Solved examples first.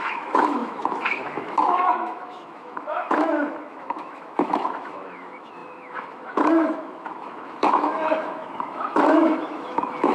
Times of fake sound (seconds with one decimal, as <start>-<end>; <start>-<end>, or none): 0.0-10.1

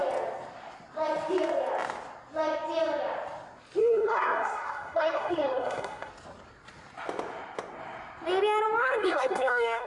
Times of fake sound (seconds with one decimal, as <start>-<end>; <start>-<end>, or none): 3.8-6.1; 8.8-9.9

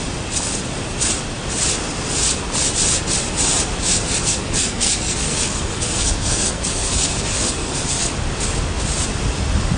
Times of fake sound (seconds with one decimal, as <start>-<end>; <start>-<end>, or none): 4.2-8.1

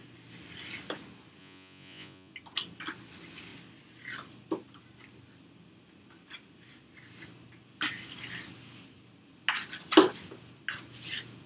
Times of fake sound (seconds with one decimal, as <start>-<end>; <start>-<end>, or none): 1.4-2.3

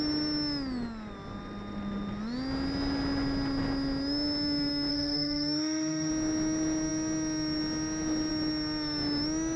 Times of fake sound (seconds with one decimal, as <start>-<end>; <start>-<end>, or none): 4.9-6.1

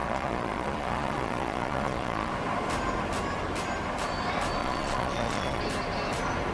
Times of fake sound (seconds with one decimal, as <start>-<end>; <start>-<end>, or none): 0.0-2.3; 4.6-5.6

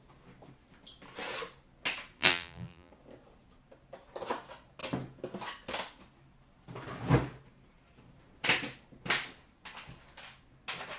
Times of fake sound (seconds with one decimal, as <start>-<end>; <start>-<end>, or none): 2.2-2.9